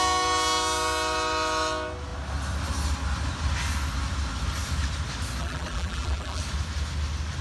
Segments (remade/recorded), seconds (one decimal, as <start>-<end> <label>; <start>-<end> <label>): 0.0-5.4 recorded; 5.4-6.4 remade; 6.4-7.4 recorded